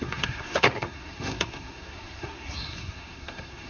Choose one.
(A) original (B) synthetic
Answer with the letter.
B